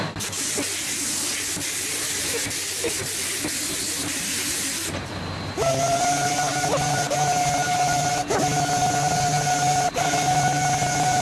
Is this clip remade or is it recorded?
recorded